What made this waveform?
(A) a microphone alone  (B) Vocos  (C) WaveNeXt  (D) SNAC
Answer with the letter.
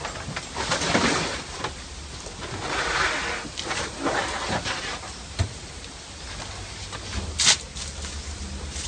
A